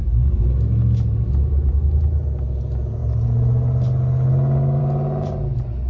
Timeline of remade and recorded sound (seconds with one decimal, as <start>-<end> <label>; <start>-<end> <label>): 0.0-5.9 recorded